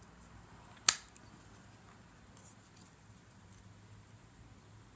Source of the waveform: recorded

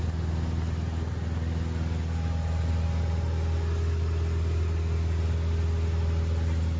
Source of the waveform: recorded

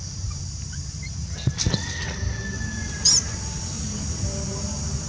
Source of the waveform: recorded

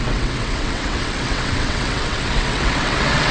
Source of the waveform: remade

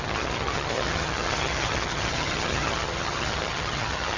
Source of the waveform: remade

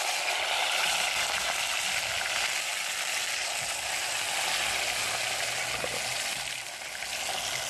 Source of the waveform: recorded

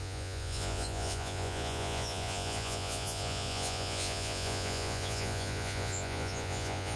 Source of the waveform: remade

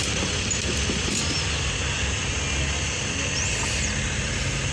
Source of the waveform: recorded